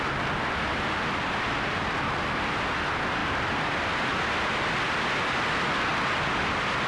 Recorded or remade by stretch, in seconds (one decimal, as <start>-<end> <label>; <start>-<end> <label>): 0.0-3.2 recorded; 3.2-4.5 remade; 4.5-5.9 recorded; 5.9-6.4 remade; 6.4-6.9 recorded